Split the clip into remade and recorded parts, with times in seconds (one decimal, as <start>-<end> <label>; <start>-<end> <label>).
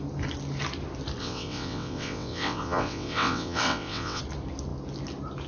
0.0-1.2 recorded; 1.2-4.2 remade; 4.2-5.5 recorded